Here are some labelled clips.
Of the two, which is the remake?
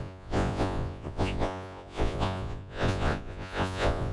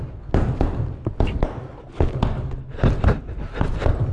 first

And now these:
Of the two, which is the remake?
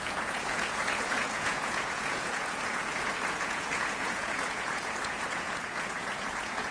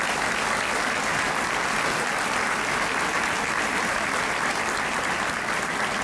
first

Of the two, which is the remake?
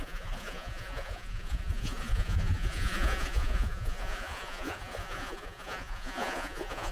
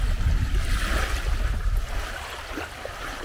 first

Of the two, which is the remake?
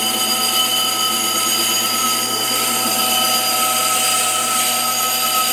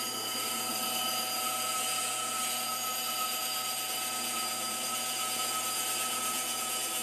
second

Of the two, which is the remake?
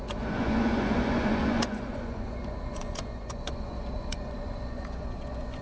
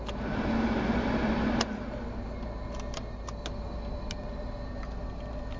first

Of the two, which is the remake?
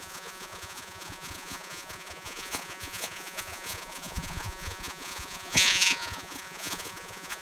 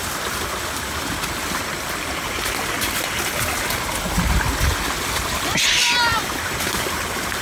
first